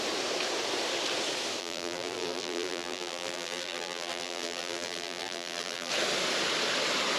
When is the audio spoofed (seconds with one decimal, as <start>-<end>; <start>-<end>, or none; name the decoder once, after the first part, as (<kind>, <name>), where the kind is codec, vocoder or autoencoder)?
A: 1.6-5.9 (vocoder, BigVGAN v2)